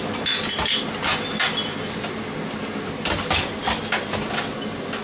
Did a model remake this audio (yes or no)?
no